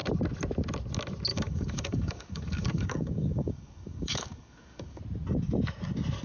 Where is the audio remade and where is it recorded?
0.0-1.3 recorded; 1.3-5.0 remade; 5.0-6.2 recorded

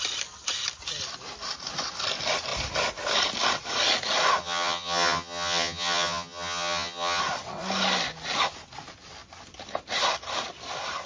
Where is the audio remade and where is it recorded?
0.0-4.4 recorded; 4.4-7.2 remade; 7.2-11.1 recorded

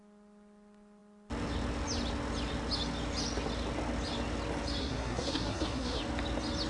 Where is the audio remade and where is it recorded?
0.0-4.8 recorded; 4.8-6.0 remade; 6.0-6.7 recorded

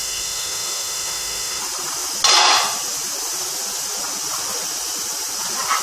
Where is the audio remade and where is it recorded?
0.0-1.6 remade; 1.6-5.8 recorded

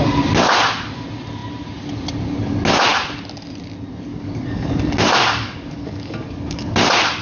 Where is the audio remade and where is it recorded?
0.0-4.1 recorded; 4.1-6.7 remade; 6.7-7.2 recorded

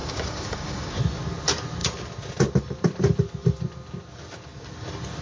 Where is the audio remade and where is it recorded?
0.0-1.0 remade; 1.0-5.2 recorded

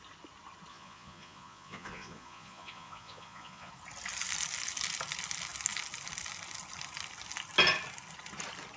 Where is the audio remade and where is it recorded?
0.0-0.7 recorded; 0.7-3.7 remade; 3.7-8.8 recorded